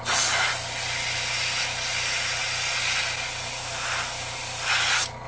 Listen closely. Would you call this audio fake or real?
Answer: real